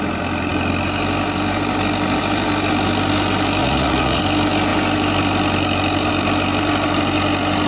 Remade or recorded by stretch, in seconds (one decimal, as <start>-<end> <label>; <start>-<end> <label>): 0.0-3.6 recorded; 3.6-4.2 remade; 4.2-7.7 recorded